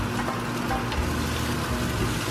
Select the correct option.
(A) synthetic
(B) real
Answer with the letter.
B